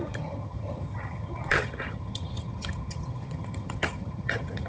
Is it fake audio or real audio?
fake